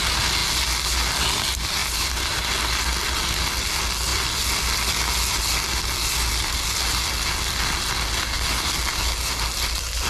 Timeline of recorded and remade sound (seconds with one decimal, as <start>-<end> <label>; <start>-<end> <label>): 0.0-1.8 recorded; 1.8-2.4 remade; 2.4-10.1 recorded

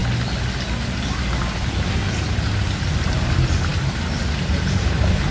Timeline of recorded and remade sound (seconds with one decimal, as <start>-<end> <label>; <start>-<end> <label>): 0.0-0.9 recorded; 0.9-2.0 remade; 2.0-2.9 recorded; 2.9-5.3 remade

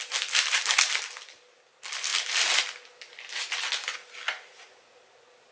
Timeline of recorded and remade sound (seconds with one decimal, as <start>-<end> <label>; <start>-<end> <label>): 0.0-5.5 recorded

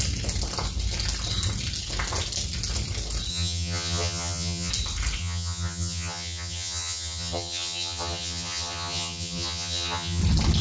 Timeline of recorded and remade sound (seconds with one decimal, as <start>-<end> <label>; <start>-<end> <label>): 0.0-3.3 recorded; 3.3-4.7 remade; 4.7-5.2 recorded; 5.2-10.2 remade; 10.2-10.6 recorded